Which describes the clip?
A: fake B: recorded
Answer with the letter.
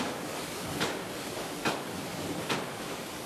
A